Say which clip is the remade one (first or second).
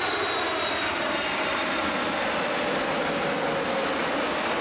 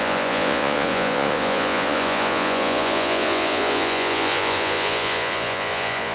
second